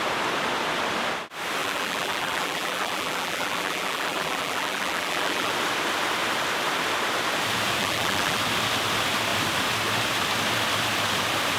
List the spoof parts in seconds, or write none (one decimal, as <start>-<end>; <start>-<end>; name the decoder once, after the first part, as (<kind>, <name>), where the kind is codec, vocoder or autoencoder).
1.6-5.5 (vocoder, BigVGAN v2); 7.8-8.4

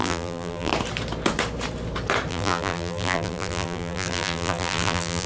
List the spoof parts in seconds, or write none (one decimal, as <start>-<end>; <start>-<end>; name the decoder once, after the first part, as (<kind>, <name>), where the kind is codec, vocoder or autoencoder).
0.0-0.7 (vocoder, BigVGAN v2); 2.3-5.3

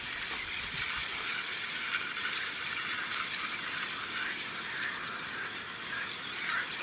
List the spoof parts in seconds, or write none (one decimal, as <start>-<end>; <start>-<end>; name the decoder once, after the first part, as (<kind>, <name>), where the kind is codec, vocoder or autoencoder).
1.0-1.5 (vocoder, BigVGAN v2)

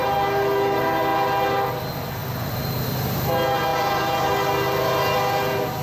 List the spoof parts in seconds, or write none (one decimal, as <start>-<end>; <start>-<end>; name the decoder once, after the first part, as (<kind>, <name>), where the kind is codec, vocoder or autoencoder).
2.2-3.3 (vocoder, BigVGAN v2)